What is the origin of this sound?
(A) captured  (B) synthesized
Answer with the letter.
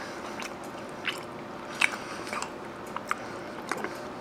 A